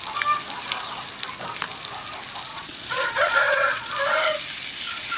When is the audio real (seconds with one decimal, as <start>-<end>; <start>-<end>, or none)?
0.0-2.5; 3.9-5.2